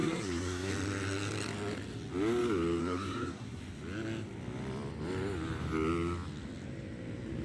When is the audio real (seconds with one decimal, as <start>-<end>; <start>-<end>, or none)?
0.7-2.8; 3.6-7.4